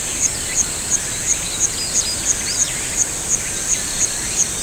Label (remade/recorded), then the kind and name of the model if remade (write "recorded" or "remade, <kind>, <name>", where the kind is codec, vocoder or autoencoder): recorded